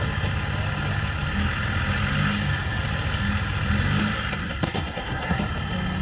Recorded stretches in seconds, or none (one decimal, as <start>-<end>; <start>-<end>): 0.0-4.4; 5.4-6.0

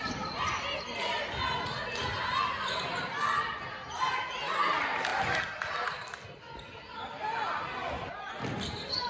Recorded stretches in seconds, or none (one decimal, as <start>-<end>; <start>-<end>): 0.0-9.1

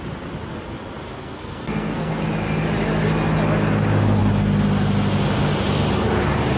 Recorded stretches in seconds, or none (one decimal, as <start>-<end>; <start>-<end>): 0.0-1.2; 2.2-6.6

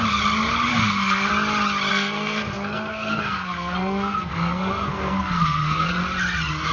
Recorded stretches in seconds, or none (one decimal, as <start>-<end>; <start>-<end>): 0.0-0.7; 1.3-1.9; 5.9-6.7

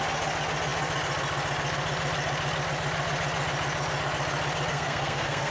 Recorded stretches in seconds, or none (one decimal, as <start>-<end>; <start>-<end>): 0.0-4.7